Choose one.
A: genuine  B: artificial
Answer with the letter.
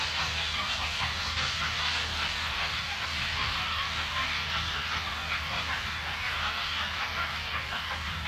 B